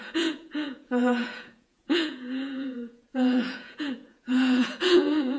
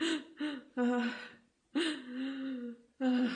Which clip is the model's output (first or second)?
first